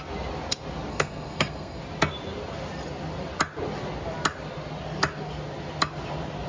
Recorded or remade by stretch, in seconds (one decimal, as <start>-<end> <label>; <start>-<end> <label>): 0.0-0.9 recorded; 0.9-1.8 remade; 1.8-6.5 recorded